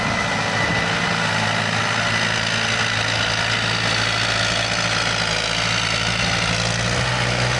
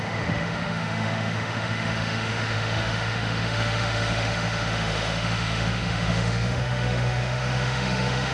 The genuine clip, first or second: first